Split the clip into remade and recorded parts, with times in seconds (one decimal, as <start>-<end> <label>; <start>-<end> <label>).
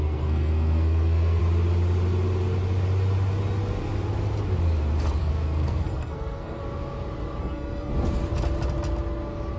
0.0-1.4 remade; 1.4-5.2 recorded; 5.2-6.6 remade; 6.6-7.4 recorded; 7.4-7.9 remade; 7.9-9.6 recorded